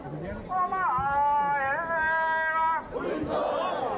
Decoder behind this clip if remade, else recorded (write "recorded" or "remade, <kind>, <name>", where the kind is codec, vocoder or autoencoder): recorded